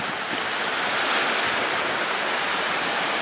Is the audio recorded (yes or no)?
yes